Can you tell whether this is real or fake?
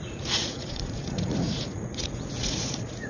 fake